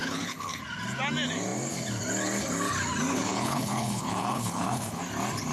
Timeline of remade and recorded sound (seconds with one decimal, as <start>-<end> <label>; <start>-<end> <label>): 0.0-0.6 remade; 0.6-3.1 recorded; 3.1-5.0 remade; 5.0-5.5 recorded